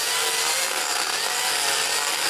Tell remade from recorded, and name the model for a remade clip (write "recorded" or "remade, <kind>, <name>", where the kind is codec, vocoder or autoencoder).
recorded